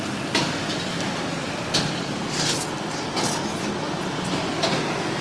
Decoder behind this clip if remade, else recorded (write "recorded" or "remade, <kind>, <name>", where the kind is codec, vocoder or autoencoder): recorded